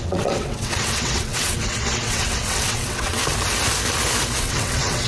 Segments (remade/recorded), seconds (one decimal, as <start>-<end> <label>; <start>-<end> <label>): 0.0-3.2 remade; 3.2-4.4 recorded; 4.4-5.1 remade